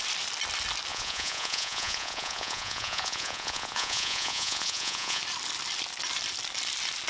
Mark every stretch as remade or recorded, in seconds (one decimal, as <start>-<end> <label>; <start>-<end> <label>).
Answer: 0.0-0.9 recorded; 0.9-5.2 remade; 5.2-7.1 recorded